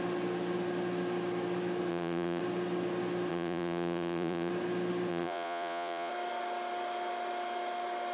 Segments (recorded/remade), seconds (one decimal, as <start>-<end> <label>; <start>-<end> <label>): 0.0-1.9 recorded; 1.9-2.4 remade; 2.4-3.3 recorded; 3.3-4.5 remade; 4.5-5.1 recorded; 5.1-6.1 remade; 6.1-8.1 recorded